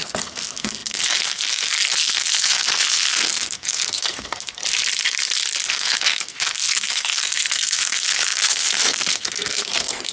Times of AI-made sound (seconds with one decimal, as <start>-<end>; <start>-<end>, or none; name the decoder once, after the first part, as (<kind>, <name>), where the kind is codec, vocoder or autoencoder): 0.0-4.6 (codec, SNAC); 5.7-10.1